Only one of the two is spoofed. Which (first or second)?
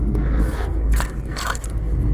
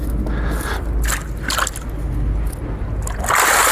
first